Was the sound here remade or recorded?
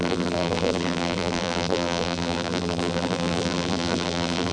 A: remade